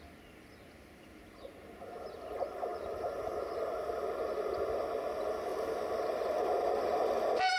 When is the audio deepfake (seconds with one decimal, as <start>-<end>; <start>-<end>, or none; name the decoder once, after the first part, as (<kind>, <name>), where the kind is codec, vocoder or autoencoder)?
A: 2.7-3.8 (vocoder, BigVGAN v2); 5.5-6.5

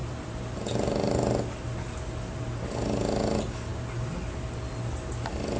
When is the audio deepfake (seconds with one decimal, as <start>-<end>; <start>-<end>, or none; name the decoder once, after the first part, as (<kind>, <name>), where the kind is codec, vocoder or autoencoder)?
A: none